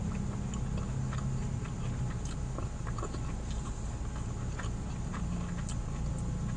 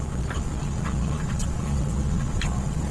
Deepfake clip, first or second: second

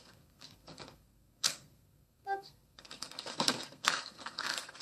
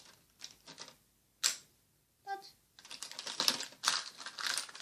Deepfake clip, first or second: first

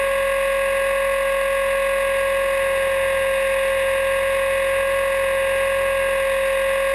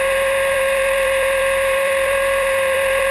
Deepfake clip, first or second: second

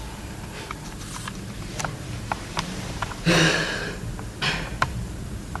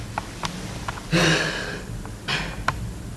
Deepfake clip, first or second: first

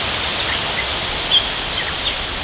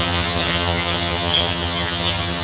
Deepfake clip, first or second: second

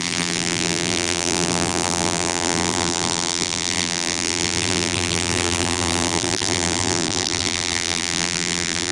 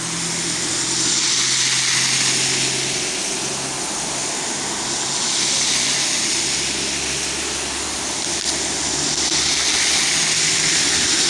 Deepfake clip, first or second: first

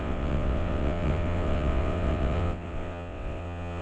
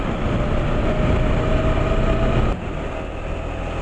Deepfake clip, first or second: first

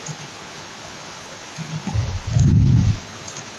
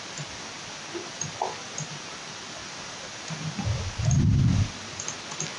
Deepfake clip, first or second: first